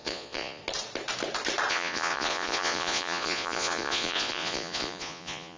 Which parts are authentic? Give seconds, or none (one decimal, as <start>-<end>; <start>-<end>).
0.6-1.7